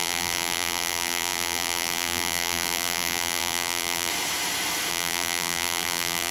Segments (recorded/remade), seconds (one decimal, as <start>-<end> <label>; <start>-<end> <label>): 0.0-4.1 remade; 4.1-4.9 recorded; 4.9-6.3 remade